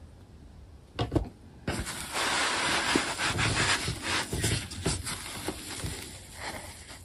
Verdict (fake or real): real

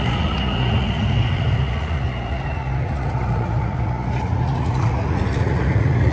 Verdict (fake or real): fake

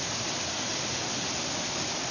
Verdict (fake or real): real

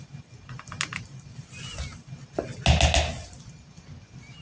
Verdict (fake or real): real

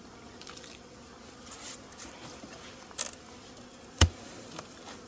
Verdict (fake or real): real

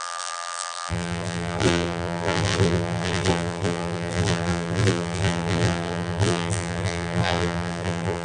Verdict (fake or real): fake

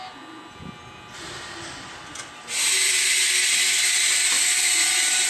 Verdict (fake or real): real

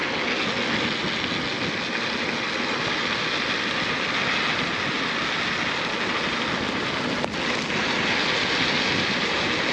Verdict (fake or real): real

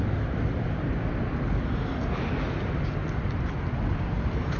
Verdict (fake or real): real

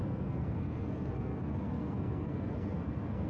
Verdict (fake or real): fake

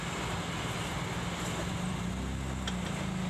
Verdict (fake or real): real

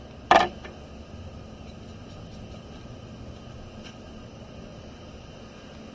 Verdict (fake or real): real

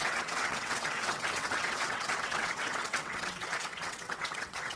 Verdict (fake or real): fake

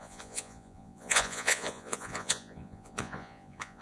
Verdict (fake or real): fake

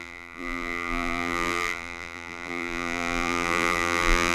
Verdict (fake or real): fake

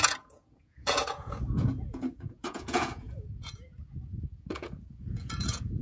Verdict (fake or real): fake